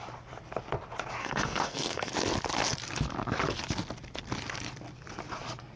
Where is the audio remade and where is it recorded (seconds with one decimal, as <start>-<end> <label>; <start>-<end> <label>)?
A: 0.0-1.2 recorded; 1.2-2.1 remade; 2.1-5.8 recorded